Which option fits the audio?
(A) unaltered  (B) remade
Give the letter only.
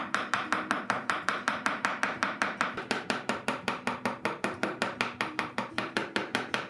B